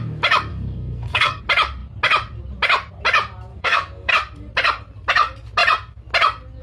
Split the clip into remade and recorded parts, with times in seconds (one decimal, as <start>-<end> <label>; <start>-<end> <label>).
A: 0.0-0.5 recorded; 0.5-1.4 remade; 1.4-3.5 recorded; 3.5-4.1 remade; 4.1-6.6 recorded